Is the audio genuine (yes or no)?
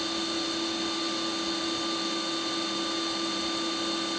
yes